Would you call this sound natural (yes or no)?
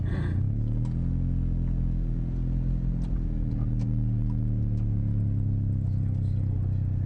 yes